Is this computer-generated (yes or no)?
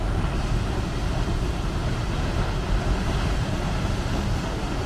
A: no